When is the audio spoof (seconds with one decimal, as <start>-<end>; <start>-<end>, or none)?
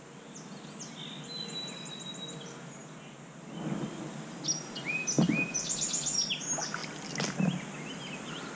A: none